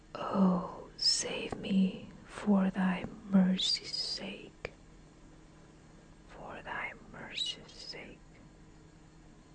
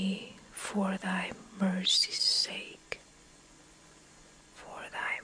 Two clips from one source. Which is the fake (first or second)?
second